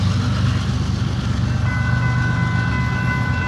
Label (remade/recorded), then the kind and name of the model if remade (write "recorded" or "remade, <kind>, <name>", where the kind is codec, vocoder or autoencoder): recorded